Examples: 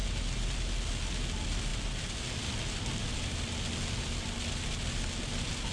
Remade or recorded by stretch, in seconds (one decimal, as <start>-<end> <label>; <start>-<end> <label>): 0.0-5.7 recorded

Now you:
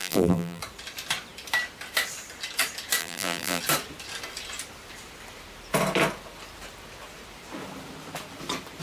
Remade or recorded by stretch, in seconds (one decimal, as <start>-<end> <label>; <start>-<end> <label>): 0.0-0.6 remade; 0.6-3.0 recorded; 3.0-3.6 remade; 3.6-8.8 recorded

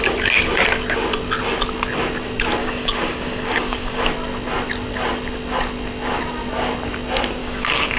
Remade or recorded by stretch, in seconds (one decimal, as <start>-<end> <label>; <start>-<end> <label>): 0.0-2.6 recorded; 2.6-4.0 remade; 4.0-7.4 recorded; 7.4-8.0 remade

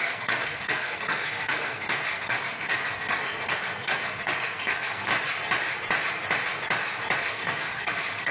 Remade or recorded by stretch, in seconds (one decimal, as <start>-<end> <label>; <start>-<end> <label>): 0.0-5.1 remade; 5.1-7.3 recorded; 7.3-8.3 remade

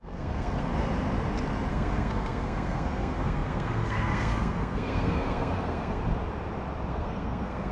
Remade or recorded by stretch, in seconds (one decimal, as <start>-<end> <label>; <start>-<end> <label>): 0.0-0.7 remade; 0.7-1.7 recorded; 1.7-6.0 remade; 6.0-6.9 recorded; 6.9-7.7 remade